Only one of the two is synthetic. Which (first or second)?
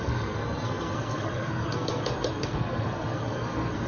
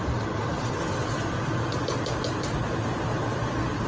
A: first